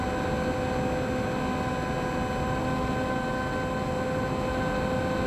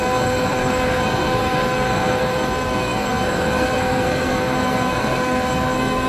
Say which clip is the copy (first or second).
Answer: second